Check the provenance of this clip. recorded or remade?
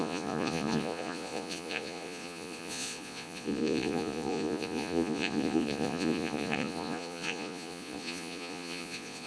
remade